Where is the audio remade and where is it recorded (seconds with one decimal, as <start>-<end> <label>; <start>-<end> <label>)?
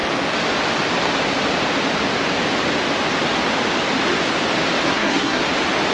0.0-4.9 recorded; 4.9-5.4 remade; 5.4-5.9 recorded